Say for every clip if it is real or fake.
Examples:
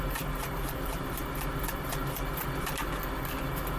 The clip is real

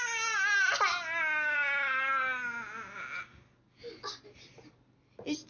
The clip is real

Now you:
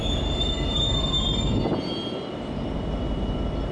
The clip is real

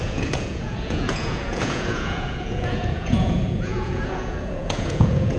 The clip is fake